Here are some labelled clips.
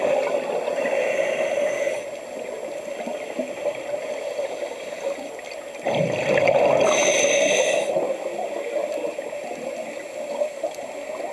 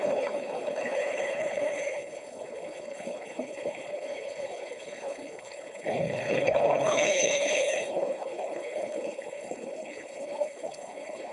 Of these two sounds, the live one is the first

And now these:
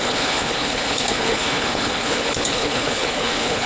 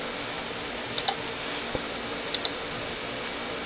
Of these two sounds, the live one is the second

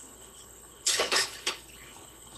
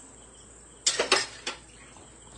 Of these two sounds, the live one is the second